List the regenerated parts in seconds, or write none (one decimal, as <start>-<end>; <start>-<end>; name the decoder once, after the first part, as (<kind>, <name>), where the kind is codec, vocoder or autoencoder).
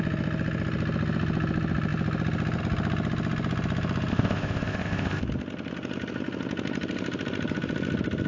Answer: 4.1-5.2 (codec, ZipCodec)